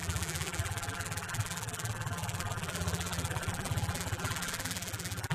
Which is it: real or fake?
fake